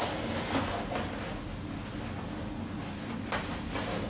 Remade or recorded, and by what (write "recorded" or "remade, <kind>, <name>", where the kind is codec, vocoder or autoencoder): recorded